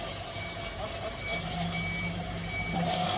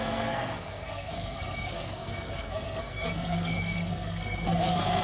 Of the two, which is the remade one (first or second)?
second